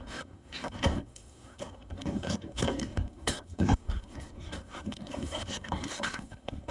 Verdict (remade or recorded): remade